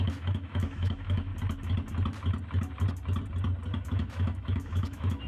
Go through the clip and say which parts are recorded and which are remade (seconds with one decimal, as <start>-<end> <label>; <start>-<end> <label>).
0.0-1.3 remade; 1.3-3.8 recorded; 3.8-5.3 remade